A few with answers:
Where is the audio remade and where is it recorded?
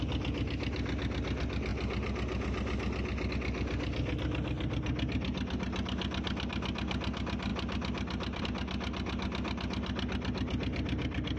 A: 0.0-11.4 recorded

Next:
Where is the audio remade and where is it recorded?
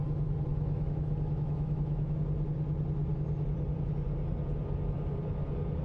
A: 0.0-0.5 recorded; 0.5-2.2 remade; 2.2-5.8 recorded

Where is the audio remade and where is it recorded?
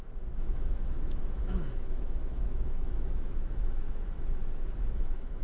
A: 0.0-5.4 remade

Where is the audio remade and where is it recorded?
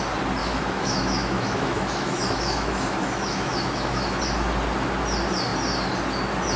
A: 0.0-0.4 recorded; 0.4-4.2 remade; 4.2-6.6 recorded